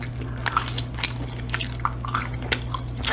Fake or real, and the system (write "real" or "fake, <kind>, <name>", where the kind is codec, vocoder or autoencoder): real